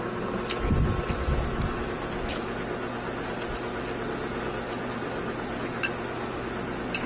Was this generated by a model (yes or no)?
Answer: no